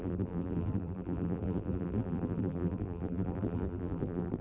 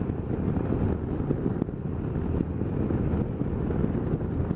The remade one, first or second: first